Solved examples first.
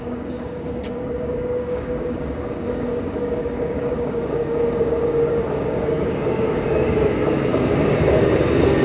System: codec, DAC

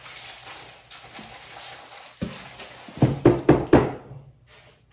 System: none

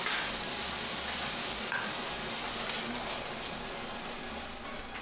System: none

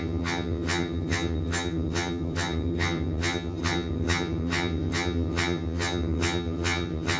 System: vocoder, HiFi-GAN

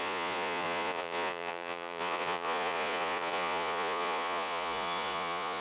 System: vocoder, Vocos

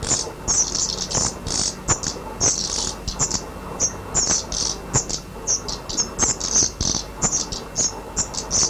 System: none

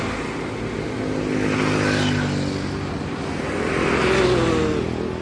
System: none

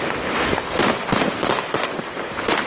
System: vocoder, BigVGAN v2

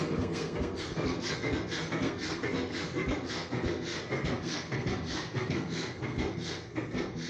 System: codec, SNAC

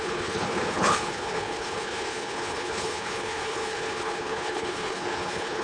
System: codec, HILCodec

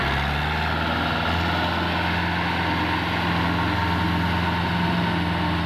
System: none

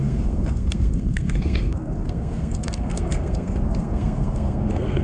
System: codec, SNAC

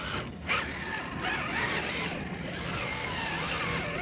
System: none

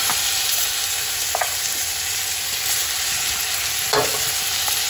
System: none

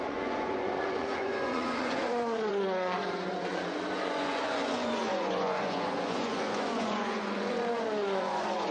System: vocoder, Vocos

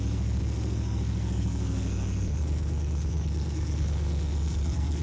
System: codec, SNAC